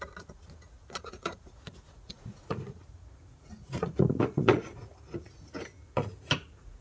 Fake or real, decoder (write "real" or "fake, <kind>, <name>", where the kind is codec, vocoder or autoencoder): fake, vocoder, Vocos